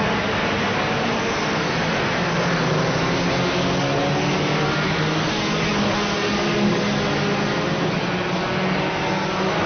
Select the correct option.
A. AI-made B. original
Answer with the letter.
B